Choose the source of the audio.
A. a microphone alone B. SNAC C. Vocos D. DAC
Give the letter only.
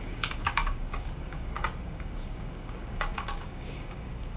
D